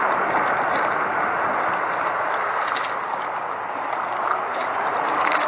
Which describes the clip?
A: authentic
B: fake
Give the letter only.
A